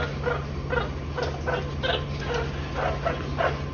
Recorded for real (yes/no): yes